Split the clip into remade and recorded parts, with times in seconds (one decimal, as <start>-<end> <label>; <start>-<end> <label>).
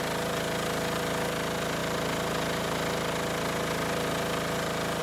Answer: 0.0-5.0 recorded